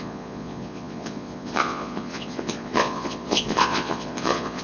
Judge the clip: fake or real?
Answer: fake